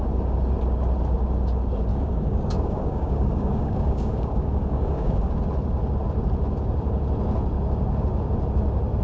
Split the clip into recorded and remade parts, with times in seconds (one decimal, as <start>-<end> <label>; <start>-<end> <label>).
0.0-1.9 recorded; 1.9-5.3 remade; 5.3-9.0 recorded